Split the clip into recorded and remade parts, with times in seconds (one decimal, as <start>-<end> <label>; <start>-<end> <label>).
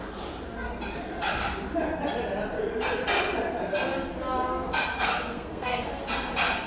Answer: 0.0-4.9 recorded; 4.9-6.0 remade; 6.0-6.7 recorded